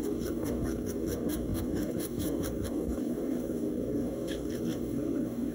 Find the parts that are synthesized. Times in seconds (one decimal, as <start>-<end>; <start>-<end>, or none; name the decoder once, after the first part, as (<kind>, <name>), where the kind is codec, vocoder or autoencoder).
0.0-5.5 (codec, DAC)